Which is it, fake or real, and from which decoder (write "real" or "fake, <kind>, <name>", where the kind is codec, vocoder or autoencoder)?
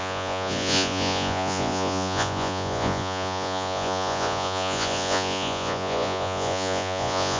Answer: fake, vocoder, Vocos